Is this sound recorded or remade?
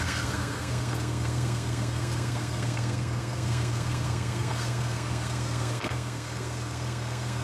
remade